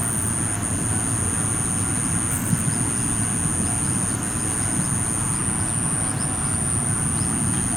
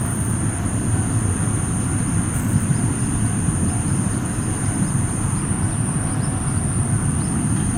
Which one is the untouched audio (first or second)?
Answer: first